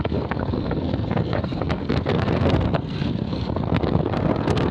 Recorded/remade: remade